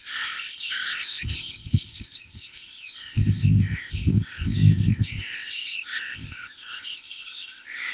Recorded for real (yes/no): no